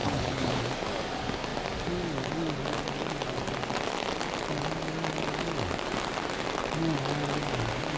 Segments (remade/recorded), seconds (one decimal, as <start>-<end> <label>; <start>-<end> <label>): 0.0-0.6 remade; 0.6-8.0 recorded